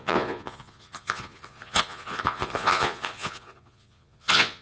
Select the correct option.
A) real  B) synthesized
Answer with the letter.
B